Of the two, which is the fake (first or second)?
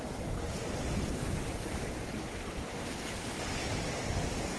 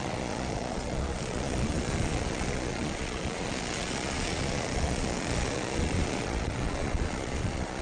second